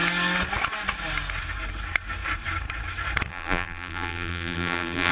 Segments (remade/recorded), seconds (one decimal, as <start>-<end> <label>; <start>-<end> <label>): 0.0-3.3 recorded; 3.3-5.1 remade